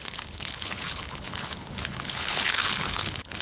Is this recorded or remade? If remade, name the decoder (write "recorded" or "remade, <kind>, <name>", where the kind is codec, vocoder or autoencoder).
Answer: remade, codec, HILCodec